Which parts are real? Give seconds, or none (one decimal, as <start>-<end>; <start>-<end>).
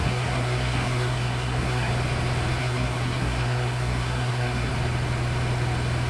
1.9-2.6; 4.7-6.1